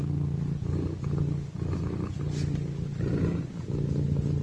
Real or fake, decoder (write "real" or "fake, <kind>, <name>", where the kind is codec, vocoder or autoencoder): real